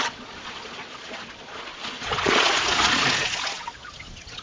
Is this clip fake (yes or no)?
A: yes